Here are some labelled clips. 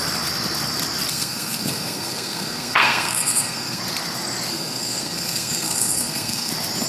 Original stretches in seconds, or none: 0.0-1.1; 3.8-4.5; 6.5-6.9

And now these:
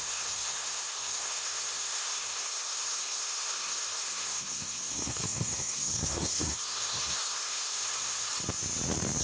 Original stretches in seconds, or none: 8.3-9.2

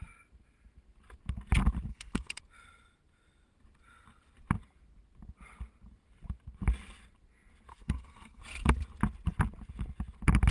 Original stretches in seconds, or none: 0.0-1.9; 2.4-7.7; 8.4-10.5

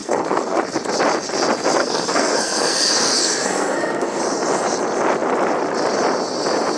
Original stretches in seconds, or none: 0.6-1.8; 4.2-6.8

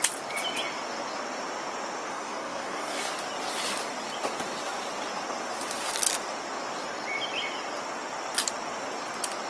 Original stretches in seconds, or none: 0.0-2.1; 3.1-9.5